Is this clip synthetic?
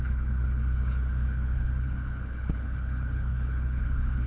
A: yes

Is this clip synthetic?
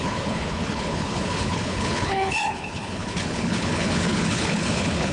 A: yes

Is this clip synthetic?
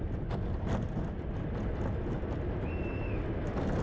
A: no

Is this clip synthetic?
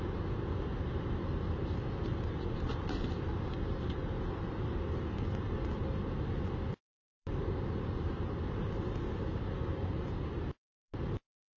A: no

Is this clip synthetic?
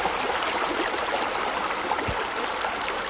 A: no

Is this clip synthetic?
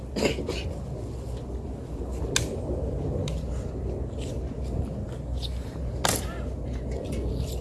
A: no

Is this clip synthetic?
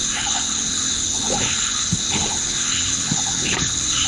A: yes